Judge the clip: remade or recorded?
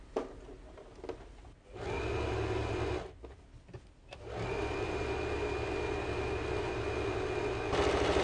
recorded